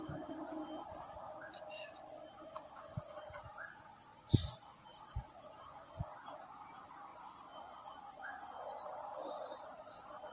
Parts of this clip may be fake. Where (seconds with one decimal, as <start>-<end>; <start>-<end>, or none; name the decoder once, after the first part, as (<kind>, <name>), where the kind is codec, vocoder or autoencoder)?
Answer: none